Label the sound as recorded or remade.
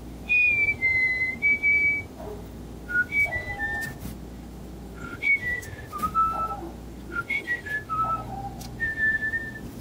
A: recorded